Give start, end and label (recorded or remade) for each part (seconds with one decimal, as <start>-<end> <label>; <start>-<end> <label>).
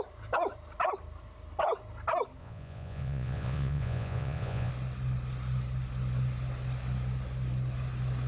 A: 0.0-2.4 recorded; 2.4-4.7 remade; 4.7-8.3 recorded